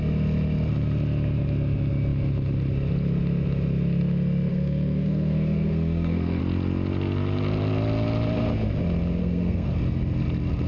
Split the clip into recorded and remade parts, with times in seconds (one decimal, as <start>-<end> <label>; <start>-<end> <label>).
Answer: 0.0-4.5 recorded; 4.5-6.4 remade; 6.4-9.2 recorded; 9.2-9.7 remade; 9.7-10.7 recorded